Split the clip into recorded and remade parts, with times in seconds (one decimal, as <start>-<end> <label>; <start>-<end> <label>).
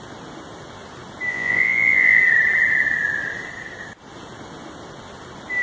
0.0-1.3 recorded; 1.3-2.2 remade; 2.2-5.6 recorded